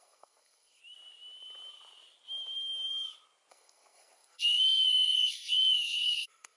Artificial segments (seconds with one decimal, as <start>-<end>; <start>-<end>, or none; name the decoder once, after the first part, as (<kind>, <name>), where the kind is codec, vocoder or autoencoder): 0.0-0.8 (codec, SNAC); 3.5-6.6